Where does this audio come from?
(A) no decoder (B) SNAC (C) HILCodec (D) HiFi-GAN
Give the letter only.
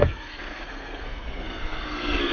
B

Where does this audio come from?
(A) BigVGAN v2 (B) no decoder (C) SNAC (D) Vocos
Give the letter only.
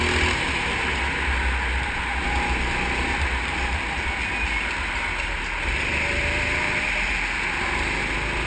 B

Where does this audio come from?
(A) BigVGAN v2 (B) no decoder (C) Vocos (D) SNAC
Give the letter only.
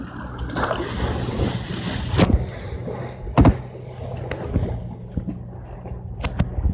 B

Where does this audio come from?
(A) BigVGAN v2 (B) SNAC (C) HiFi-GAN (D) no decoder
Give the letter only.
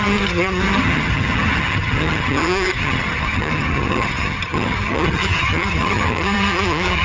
C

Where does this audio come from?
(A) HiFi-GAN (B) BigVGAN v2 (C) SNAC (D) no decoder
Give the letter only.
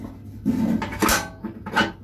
D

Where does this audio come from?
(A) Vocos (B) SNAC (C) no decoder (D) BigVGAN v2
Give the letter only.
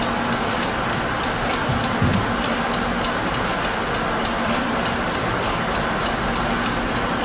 C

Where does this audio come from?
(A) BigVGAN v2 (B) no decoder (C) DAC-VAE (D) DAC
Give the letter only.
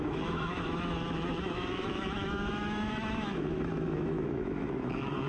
C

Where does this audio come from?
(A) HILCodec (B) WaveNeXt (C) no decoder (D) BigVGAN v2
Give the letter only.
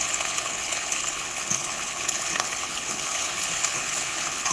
A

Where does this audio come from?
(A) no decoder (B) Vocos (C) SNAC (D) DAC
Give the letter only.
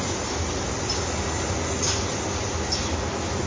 A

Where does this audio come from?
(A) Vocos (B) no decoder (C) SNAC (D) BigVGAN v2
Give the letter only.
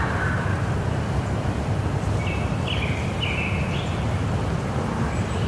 B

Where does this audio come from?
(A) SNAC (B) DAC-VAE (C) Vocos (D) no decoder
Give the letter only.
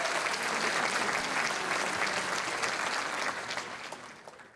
D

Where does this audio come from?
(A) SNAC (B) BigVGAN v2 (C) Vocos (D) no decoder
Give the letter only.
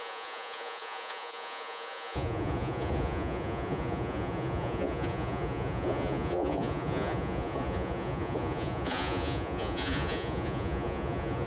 C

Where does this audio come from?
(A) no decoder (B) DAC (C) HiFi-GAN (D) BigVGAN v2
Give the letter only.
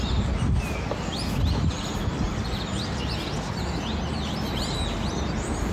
A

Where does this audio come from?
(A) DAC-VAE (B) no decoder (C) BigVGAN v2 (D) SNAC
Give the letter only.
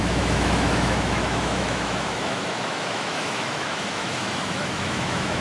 A